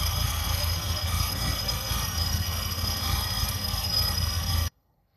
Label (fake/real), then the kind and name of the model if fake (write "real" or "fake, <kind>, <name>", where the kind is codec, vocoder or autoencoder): fake, codec, SNAC